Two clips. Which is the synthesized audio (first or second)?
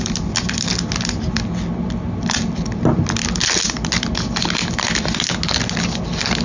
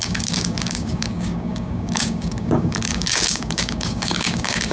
second